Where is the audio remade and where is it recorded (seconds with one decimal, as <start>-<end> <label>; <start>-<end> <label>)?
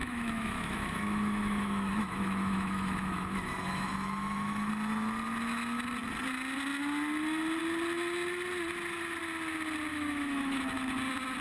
0.0-4.7 remade; 4.7-9.9 recorded; 9.9-10.6 remade; 10.6-11.4 recorded